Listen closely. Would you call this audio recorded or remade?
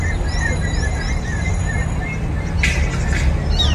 recorded